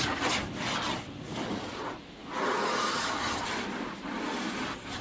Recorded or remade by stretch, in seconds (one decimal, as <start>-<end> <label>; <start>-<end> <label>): 0.0-5.0 recorded